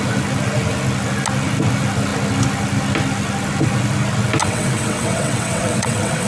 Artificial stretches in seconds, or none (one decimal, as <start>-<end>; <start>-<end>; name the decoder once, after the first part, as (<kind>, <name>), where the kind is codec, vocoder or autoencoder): 4.4-6.3 (vocoder, WaveNeXt)